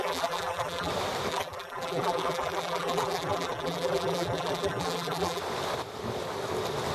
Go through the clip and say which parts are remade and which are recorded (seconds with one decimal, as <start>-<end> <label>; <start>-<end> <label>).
0.0-0.9 remade; 0.9-1.3 recorded; 1.3-5.4 remade; 5.4-6.9 recorded